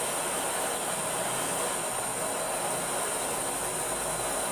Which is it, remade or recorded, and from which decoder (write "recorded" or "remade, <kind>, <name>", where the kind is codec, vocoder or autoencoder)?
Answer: recorded